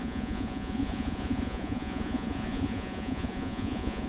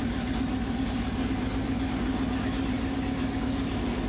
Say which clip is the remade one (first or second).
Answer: first